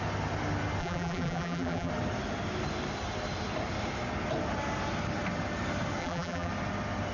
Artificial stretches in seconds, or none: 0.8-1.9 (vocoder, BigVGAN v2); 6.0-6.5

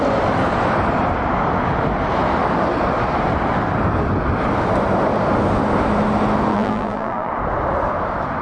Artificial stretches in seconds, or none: 6.5-7.3 (vocoder, BigVGAN v2)

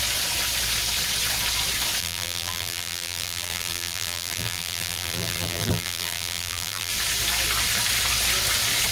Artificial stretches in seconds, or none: 2.0-6.9 (vocoder, BigVGAN v2)

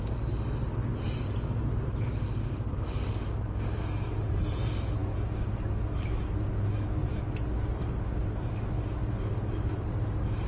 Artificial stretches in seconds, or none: 0.9-3.2 (vocoder, BigVGAN v2)

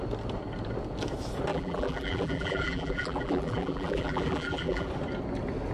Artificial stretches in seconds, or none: 1.5-4.9 (vocoder, BigVGAN v2)

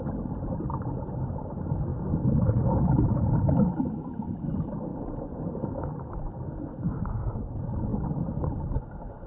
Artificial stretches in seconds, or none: 0.0-1.9 (vocoder, BigVGAN v2); 3.1-9.3

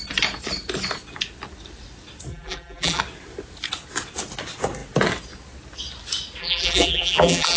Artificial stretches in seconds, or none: 2.3-3.0 (vocoder, BigVGAN v2); 6.4-7.6

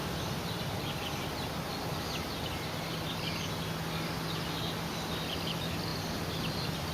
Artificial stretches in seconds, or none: none